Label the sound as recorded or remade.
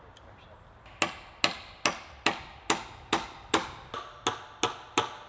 recorded